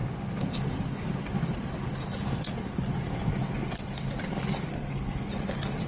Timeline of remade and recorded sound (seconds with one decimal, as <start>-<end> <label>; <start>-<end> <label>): 0.0-4.7 recorded; 4.7-5.3 remade; 5.3-5.9 recorded